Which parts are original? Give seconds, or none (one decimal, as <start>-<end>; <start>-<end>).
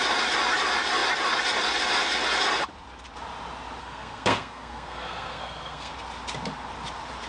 0.0-3.8; 5.9-7.3